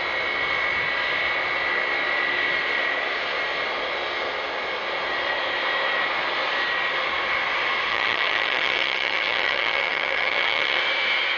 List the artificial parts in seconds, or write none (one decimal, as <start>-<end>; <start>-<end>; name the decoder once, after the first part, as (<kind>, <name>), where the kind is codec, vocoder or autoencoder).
7.9-10.8 (vocoder, HiFi-GAN)